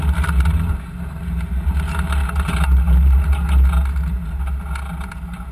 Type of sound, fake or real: real